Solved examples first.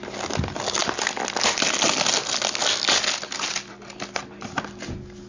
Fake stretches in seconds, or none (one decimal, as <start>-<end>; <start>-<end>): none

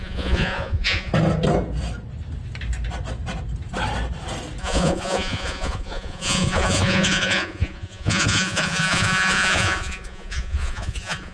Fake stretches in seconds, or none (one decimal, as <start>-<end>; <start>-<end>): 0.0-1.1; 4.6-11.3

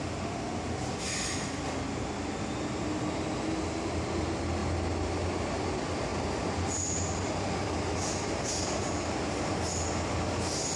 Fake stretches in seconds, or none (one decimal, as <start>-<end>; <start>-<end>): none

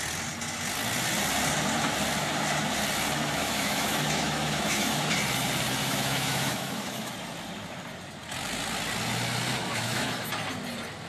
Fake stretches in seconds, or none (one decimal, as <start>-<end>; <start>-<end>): 3.4-5.1; 5.8-7.1; 9.6-10.3

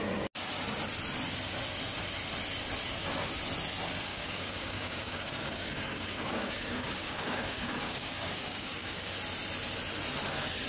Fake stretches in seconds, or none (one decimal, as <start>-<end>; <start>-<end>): 4.1-9.1